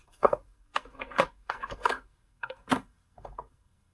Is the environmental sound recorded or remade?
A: remade